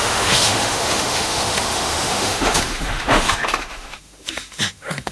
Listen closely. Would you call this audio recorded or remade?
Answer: remade